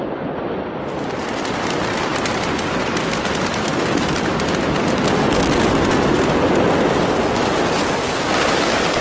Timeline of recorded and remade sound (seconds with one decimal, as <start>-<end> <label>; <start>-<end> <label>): 0.0-2.1 recorded; 2.1-3.0 remade; 3.0-9.0 recorded